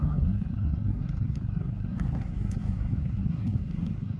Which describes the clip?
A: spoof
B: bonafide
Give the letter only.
A